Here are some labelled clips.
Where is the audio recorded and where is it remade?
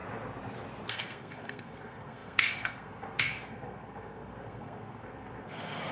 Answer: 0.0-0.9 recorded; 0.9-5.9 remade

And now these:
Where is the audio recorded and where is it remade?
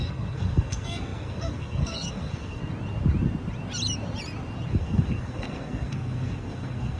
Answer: 0.0-2.6 remade; 2.6-4.7 recorded; 4.7-7.0 remade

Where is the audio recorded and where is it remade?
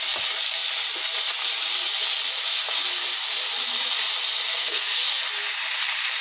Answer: 0.0-4.5 recorded; 4.5-5.2 remade; 5.2-6.2 recorded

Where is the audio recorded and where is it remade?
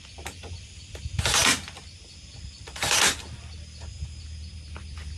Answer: 0.0-5.2 recorded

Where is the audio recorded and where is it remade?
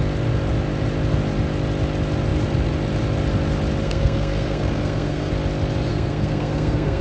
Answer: 0.0-3.8 recorded; 3.8-5.3 remade; 5.3-5.9 recorded; 5.9-7.0 remade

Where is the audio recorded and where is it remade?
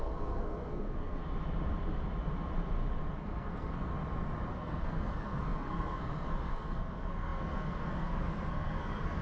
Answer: 0.0-1.2 remade; 1.2-3.1 recorded; 3.1-3.9 remade; 3.9-4.5 recorded; 4.5-9.2 remade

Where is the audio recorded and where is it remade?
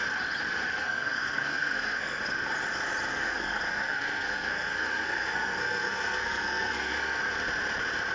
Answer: 0.0-0.8 recorded; 0.8-2.2 remade; 2.2-3.1 recorded; 3.1-7.2 remade; 7.2-8.1 recorded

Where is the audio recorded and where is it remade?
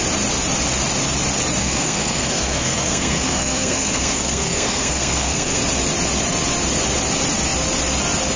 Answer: 0.0-1.6 recorded; 1.6-5.6 remade; 5.6-8.4 recorded